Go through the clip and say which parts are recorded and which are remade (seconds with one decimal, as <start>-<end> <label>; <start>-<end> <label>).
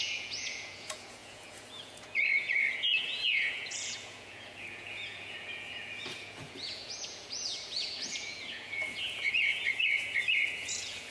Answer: 0.0-11.1 remade